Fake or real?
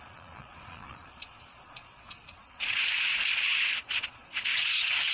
fake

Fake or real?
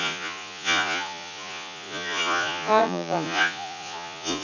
fake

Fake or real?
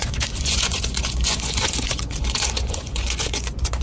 fake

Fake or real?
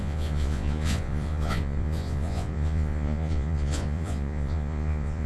fake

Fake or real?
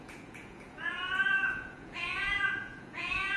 fake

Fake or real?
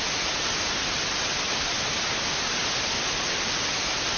real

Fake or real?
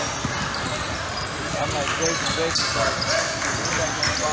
real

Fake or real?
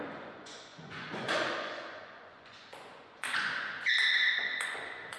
fake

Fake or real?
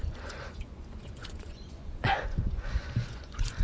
fake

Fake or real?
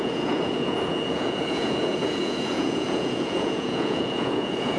fake